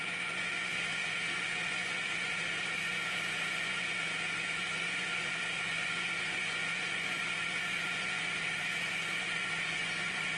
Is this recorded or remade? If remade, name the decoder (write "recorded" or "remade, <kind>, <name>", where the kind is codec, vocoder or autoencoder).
remade, vocoder, Vocos